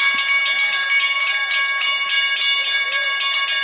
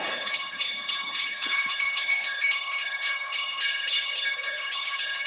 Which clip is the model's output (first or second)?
second